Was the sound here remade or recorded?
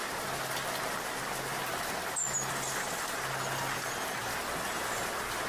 recorded